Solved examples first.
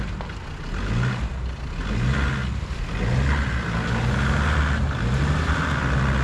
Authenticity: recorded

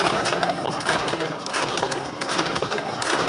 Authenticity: remade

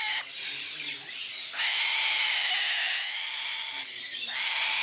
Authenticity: recorded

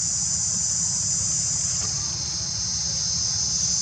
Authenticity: recorded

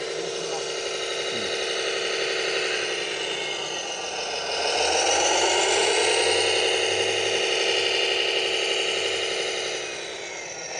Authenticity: recorded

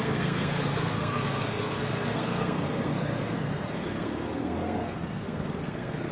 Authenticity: remade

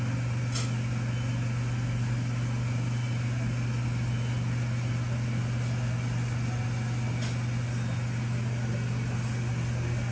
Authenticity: recorded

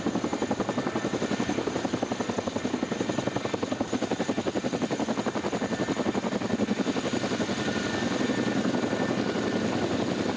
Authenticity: recorded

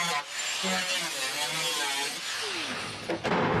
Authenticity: recorded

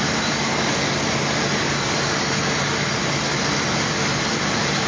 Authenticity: recorded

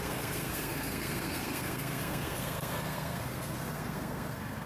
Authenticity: remade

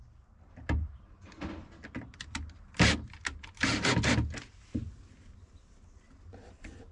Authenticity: recorded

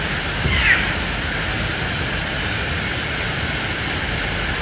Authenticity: recorded